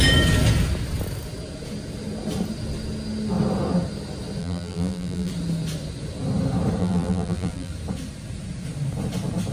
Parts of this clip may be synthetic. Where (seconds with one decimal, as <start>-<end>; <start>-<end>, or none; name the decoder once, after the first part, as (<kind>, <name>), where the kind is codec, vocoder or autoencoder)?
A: 4.4-5.3 (vocoder, BigVGAN v2); 6.8-7.7